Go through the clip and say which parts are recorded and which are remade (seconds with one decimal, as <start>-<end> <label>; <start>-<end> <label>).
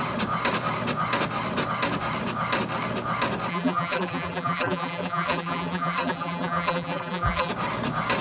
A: 0.0-3.5 recorded; 3.5-7.5 remade; 7.5-8.2 recorded